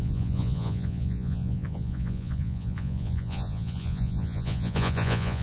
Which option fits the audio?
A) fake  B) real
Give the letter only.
A